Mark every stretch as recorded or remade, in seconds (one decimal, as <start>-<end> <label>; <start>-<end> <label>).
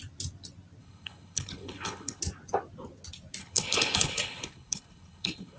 0.0-0.8 recorded; 0.8-2.2 remade; 2.2-3.4 recorded; 3.4-5.6 remade